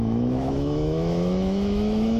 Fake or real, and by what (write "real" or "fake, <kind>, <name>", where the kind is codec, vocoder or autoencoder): fake, autoencoder, DAC-VAE